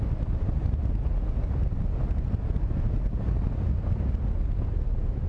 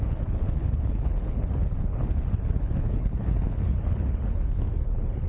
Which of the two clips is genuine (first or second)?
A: first